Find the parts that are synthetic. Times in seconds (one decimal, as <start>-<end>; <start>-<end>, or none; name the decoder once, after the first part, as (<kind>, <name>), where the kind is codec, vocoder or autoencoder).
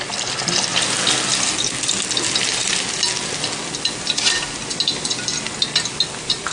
none